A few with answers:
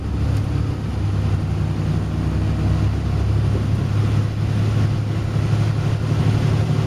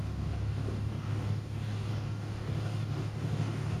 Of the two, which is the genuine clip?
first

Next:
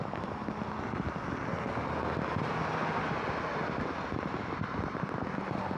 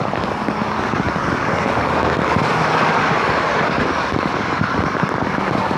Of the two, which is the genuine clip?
first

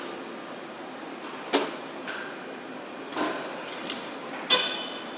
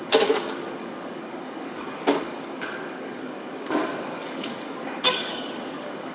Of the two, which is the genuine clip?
first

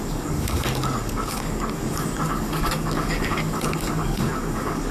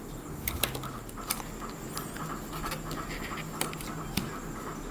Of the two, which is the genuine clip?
second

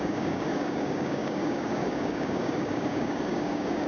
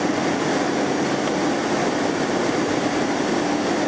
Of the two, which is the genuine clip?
second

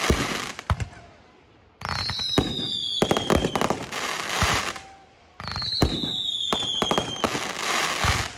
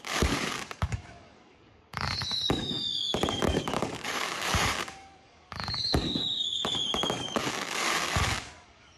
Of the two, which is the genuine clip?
first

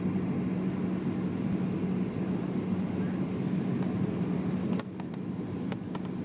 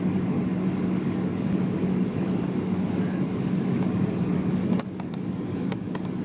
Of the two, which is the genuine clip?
first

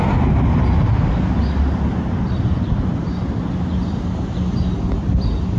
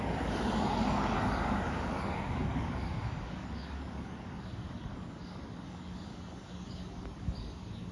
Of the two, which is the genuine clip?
first